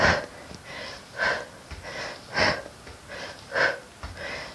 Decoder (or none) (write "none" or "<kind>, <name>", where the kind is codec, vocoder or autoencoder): none